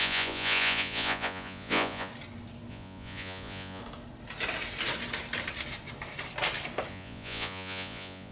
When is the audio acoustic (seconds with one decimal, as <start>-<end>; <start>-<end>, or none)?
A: 2.1-2.7; 3.8-6.9